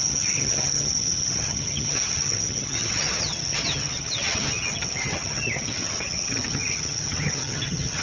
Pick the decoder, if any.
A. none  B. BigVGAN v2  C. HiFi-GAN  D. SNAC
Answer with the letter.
C